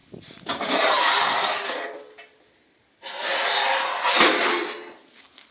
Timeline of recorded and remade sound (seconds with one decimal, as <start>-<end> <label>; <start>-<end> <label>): 0.0-2.7 remade; 2.7-5.5 recorded